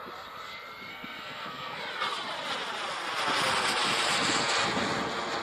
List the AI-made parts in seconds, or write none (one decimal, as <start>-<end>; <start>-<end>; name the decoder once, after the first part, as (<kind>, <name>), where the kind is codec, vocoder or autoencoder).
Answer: 0.9-1.8 (codec, SNAC)